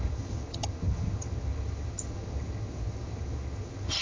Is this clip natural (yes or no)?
no